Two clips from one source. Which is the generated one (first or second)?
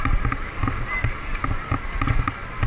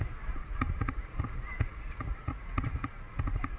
second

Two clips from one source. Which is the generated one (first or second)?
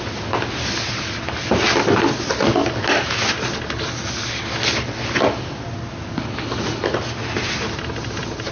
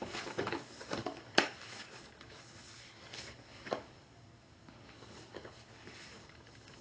second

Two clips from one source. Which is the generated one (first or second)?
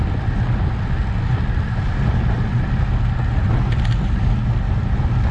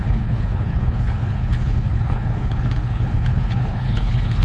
second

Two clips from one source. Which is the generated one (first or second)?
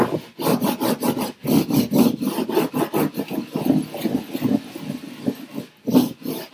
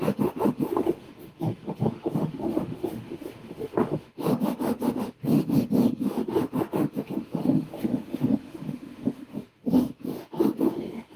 second